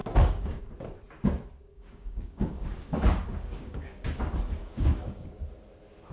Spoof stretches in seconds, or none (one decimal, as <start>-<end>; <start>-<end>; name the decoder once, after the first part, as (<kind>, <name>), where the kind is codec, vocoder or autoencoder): 0.0-0.6 (codec, DAC); 1.7-5.4